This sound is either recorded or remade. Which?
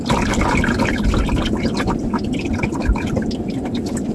recorded